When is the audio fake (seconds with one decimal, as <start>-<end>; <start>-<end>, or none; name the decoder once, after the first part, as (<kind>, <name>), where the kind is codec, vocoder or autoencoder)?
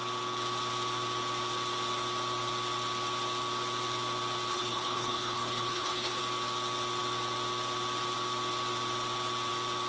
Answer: 4.5-6.2 (codec, HILCodec)